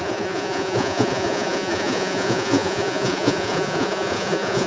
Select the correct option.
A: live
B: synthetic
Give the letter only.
B